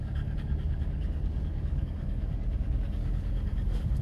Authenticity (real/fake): fake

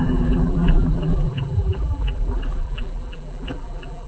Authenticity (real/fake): fake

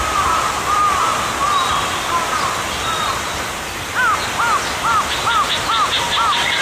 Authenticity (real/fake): real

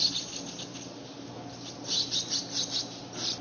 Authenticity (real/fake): real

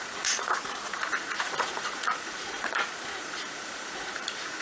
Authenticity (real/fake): fake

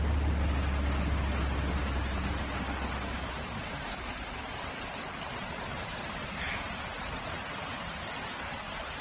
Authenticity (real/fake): real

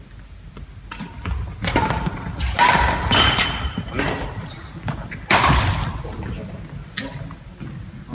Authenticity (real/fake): real